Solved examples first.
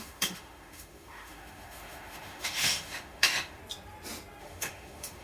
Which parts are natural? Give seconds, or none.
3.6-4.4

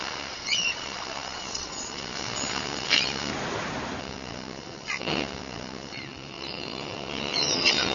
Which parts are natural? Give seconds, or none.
3.3-4.0

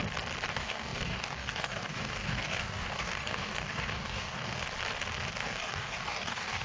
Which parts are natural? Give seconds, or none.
0.0-0.5; 4.6-5.4

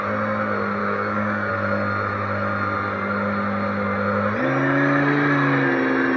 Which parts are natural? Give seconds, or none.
0.0-0.8; 1.5-6.2

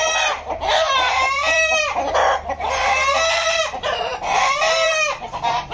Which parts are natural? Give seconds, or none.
1.9-3.3